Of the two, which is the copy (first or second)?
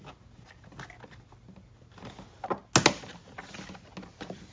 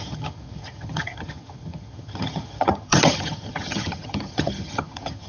second